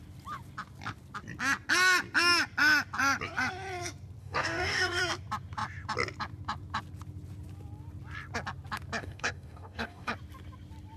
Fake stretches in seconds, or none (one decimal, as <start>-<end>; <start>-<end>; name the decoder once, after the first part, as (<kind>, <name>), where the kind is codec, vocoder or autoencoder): 4.2-5.0 (codec, DAC); 9.0-10.1